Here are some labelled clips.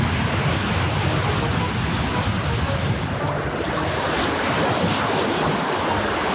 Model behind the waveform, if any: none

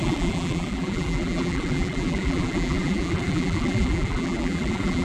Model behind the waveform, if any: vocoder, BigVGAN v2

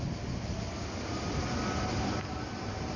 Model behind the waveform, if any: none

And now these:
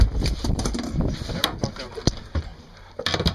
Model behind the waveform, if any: none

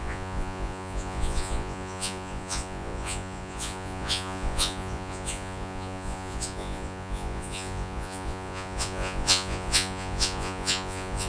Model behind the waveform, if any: vocoder, Vocos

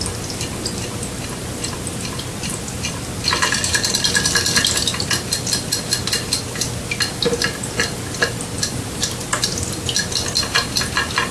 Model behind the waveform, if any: none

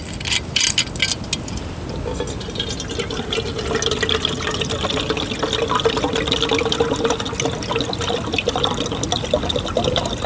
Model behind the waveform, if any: none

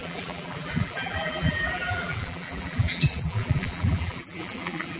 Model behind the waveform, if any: vocoder, BigVGAN v2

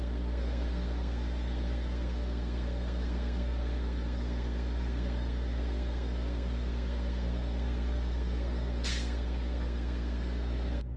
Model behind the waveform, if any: codec, SNAC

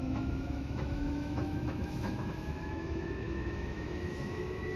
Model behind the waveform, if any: autoencoder, DAC-VAE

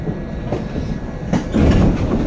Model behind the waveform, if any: none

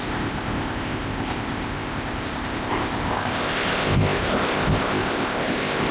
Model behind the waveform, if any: codec, ZipCodec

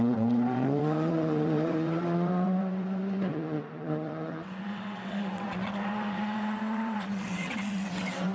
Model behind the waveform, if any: vocoder, WaveNeXt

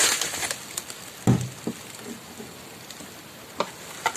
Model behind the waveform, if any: none